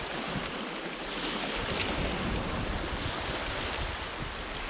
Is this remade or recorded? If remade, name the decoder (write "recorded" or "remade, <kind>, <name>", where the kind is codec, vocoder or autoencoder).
recorded